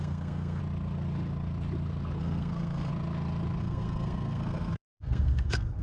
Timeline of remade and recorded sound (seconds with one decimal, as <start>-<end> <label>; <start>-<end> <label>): 0.0-0.6 remade; 0.6-2.2 recorded; 2.2-2.9 remade; 2.9-3.6 recorded; 3.6-5.8 remade